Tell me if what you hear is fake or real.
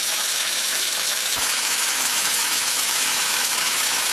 fake